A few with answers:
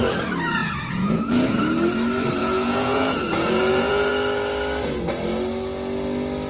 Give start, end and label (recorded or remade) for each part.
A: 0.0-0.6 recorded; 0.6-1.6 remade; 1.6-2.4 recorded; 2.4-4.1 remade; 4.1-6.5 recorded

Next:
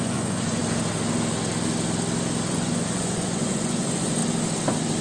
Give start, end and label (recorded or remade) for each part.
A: 0.0-0.6 remade; 0.6-2.5 recorded; 2.5-4.2 remade; 4.2-5.0 recorded